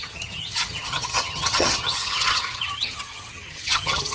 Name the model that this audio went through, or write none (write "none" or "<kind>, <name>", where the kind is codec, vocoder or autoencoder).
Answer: vocoder, HiFi-GAN